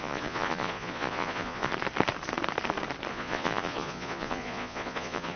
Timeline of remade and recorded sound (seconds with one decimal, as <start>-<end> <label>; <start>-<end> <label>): 0.0-1.7 remade; 1.7-3.1 recorded; 3.1-5.4 remade